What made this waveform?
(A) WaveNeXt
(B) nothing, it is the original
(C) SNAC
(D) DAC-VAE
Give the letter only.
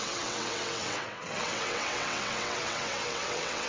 A